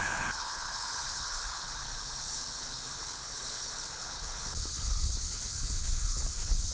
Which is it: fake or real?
fake